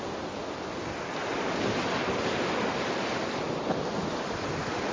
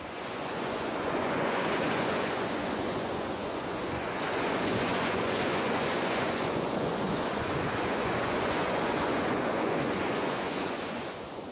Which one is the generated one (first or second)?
second